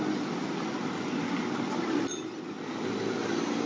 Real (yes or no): yes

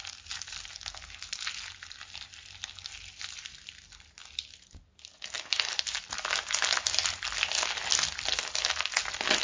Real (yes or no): yes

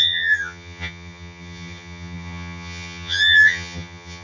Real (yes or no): no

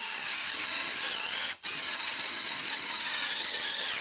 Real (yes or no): no